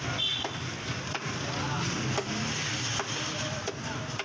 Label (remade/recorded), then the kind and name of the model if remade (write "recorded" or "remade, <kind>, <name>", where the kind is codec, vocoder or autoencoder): recorded